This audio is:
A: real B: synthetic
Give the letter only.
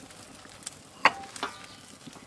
A